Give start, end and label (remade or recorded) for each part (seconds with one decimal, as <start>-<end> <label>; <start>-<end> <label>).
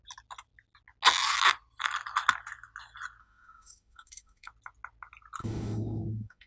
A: 0.0-3.2 recorded; 3.2-4.5 remade; 4.5-5.4 recorded; 5.4-6.5 remade